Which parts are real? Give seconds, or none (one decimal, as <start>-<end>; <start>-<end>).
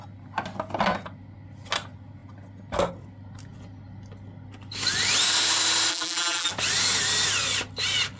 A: 0.0-5.9; 6.5-8.2